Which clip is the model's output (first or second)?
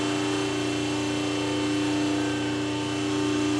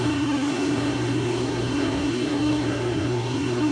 second